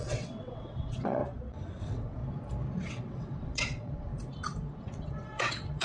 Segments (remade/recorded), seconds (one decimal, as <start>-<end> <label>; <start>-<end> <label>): 0.0-1.2 remade; 1.2-1.8 recorded; 1.8-2.2 remade; 2.2-2.9 recorded; 2.9-4.1 remade; 4.1-4.8 recorded; 4.8-5.8 remade